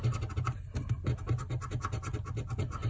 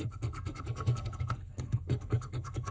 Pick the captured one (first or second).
first